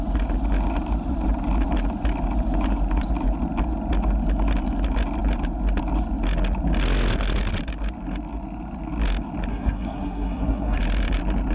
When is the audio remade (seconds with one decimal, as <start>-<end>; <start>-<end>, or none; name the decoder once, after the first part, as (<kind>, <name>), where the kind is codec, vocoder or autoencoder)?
9.5-10.8 (codec, SNAC)